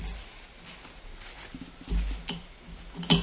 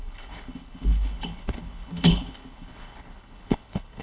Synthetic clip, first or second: second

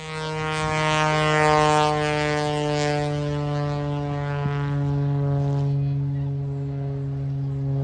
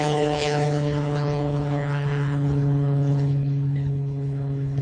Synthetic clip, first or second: second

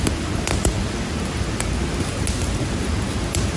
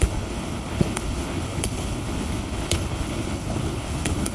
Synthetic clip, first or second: second